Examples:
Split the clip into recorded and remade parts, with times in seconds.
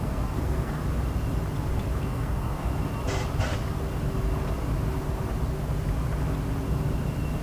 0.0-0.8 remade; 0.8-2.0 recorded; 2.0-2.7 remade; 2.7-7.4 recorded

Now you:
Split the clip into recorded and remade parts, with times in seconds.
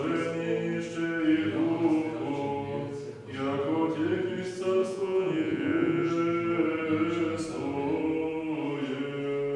0.0-4.8 recorded; 4.8-6.1 remade; 6.1-9.6 recorded